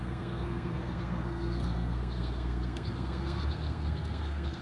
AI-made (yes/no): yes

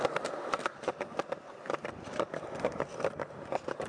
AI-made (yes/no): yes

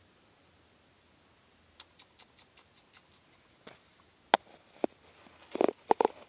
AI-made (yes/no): no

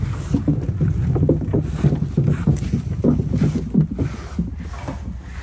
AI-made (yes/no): no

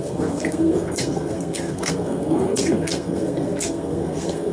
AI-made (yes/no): yes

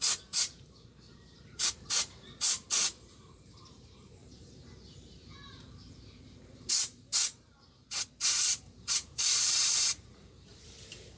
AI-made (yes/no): yes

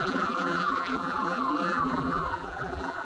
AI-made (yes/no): yes